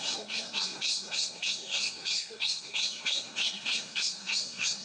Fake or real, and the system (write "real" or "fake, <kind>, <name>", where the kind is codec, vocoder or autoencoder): fake, codec, SNAC